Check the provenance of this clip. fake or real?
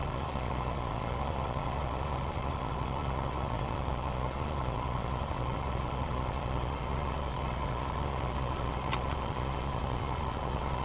fake